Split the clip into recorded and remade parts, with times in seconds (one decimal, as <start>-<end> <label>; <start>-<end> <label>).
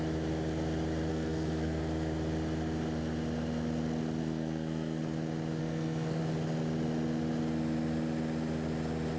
0.0-1.1 recorded; 1.1-1.8 remade; 1.8-4.2 recorded; 4.2-5.0 remade; 5.0-5.6 recorded; 5.6-6.2 remade; 6.2-9.2 recorded